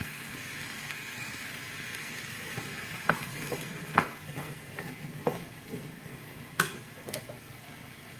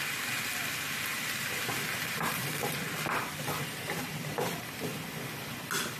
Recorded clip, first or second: second